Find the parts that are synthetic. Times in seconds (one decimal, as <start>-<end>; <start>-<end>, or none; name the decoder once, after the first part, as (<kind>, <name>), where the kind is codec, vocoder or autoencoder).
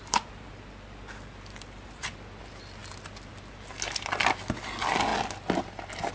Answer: 0.0-2.0 (vocoder, BigVGAN v2)